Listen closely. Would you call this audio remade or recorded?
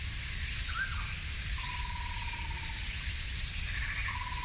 recorded